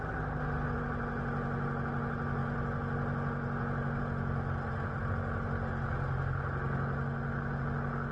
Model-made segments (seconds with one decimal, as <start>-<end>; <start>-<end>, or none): none